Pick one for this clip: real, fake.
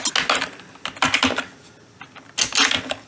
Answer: real